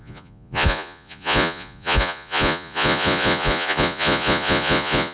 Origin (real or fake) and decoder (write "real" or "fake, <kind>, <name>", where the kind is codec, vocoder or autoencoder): fake, vocoder, Vocos